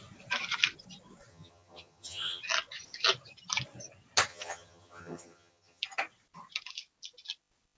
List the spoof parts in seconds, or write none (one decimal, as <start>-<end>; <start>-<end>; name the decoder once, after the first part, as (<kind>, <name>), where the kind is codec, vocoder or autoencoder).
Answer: 1.3-2.4 (vocoder, HiFi-GAN); 4.3-5.8